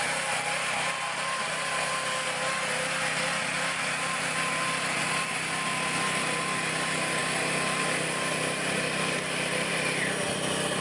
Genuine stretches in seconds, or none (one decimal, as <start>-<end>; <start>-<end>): 0.0-10.8